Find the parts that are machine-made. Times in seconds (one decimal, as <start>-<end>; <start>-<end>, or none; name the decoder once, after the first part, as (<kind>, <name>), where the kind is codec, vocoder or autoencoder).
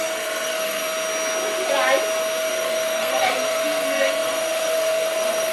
0.0-0.8 (codec, SNAC); 2.5-5.5